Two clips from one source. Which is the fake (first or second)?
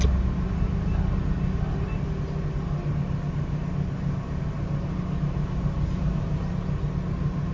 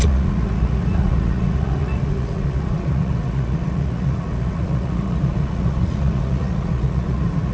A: second